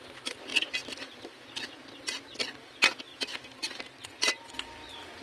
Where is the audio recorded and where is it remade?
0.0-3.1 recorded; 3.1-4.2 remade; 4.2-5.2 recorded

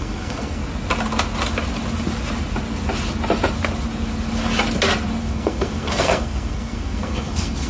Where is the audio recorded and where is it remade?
0.0-0.6 remade; 0.6-5.2 recorded; 5.2-7.7 remade

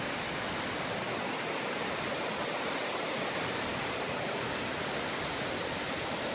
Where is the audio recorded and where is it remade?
0.0-6.3 recorded

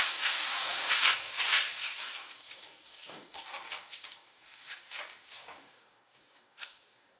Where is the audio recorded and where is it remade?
0.0-7.2 remade

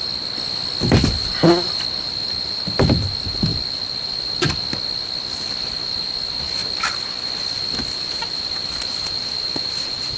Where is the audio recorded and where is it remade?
0.0-10.2 recorded